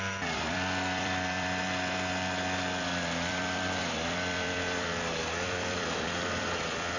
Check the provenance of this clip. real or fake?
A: fake